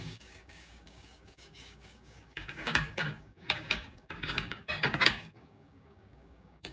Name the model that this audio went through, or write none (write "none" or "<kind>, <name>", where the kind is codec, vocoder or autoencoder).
codec, DAC